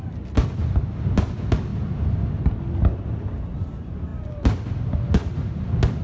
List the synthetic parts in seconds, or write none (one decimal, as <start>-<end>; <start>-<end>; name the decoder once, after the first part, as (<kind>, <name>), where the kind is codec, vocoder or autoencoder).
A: none